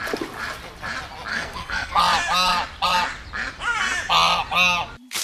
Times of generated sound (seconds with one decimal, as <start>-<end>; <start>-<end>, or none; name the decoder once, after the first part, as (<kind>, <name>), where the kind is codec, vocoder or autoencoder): 1.3-2.0 (codec, SNAC)